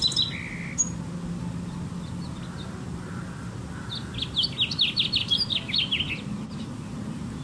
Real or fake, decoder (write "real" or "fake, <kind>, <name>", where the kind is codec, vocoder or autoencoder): real